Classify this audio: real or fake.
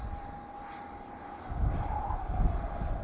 real